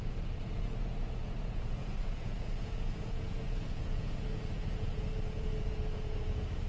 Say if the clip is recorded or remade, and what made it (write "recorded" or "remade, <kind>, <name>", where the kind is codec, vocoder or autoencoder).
remade, vocoder, Vocos